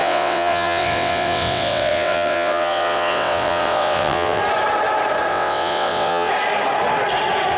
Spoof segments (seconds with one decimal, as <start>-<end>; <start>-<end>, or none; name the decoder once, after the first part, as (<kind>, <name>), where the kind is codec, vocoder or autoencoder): 0.0-4.4 (vocoder, WaveNeXt); 5.3-6.3